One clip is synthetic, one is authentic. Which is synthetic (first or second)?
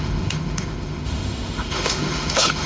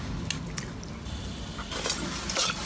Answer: first